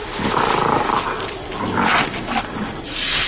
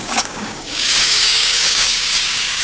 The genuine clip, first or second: first